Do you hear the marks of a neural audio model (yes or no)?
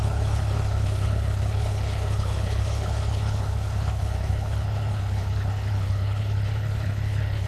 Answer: yes